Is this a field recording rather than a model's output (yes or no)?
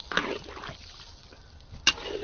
yes